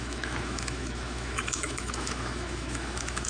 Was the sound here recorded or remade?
remade